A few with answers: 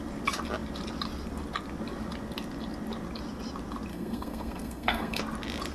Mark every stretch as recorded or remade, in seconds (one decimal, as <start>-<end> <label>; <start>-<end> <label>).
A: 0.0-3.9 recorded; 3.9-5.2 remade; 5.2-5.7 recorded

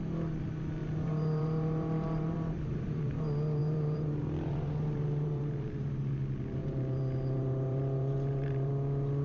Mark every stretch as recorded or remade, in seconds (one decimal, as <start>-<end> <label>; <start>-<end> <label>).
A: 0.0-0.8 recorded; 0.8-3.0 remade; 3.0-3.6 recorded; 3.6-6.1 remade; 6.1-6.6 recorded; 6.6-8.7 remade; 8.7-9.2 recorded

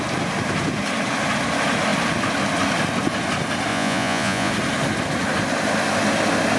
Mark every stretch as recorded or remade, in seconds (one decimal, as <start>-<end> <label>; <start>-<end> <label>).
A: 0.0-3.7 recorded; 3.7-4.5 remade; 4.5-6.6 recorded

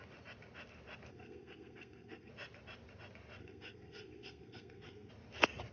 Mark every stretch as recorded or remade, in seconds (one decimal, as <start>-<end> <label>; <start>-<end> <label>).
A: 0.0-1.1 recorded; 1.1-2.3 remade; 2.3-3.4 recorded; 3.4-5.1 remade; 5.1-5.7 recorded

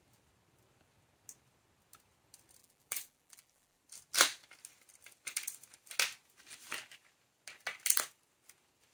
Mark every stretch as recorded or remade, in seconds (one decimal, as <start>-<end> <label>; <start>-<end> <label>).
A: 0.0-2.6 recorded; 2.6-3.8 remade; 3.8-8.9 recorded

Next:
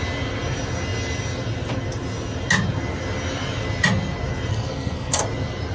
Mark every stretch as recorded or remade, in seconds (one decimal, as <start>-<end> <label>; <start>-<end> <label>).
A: 0.0-4.5 recorded; 4.5-5.2 remade; 5.2-5.7 recorded

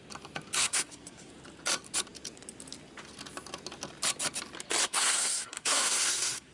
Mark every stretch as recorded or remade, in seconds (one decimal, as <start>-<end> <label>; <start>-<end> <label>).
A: 0.0-0.6 recorded; 0.6-1.3 remade; 1.3-4.8 recorded; 4.8-6.5 remade

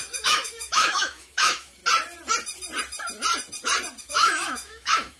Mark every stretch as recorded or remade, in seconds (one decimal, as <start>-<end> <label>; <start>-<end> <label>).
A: 0.0-1.8 remade; 1.8-4.0 recorded; 4.0-5.2 remade